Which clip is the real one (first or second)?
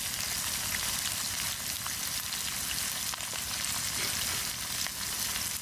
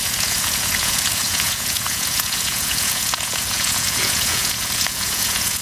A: first